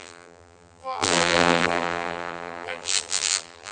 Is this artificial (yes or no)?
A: yes